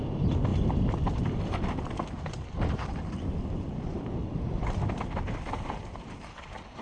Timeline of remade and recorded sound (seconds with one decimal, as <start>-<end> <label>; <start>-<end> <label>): 0.0-6.8 recorded